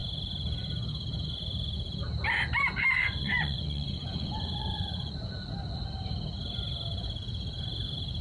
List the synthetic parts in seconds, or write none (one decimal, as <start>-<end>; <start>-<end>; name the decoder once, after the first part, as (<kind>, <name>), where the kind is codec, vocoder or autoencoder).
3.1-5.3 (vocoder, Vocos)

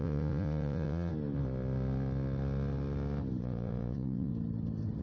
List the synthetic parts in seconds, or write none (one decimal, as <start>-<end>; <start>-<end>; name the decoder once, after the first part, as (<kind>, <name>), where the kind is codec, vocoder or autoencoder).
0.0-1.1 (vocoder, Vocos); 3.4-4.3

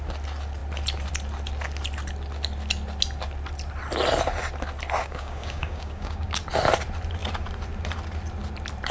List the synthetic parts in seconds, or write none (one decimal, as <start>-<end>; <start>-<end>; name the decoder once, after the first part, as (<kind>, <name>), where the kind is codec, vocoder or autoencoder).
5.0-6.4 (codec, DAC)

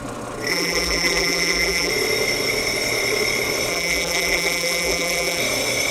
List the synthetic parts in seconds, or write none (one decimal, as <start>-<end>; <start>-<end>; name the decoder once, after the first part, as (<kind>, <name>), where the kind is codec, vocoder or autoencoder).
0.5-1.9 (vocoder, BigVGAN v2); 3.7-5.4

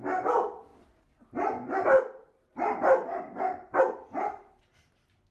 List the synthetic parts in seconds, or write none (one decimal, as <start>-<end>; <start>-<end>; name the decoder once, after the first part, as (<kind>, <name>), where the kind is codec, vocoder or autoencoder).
none